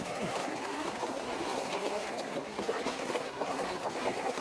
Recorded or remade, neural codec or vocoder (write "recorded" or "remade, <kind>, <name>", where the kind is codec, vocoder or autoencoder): remade, codec, SNAC